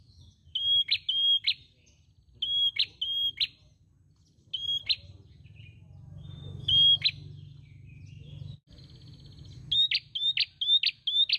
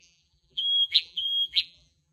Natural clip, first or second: first